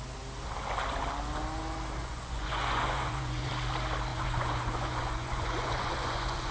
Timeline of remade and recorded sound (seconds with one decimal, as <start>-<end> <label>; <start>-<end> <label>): 0.0-2.0 recorded; 2.0-3.5 remade; 3.5-4.1 recorded; 4.1-6.5 remade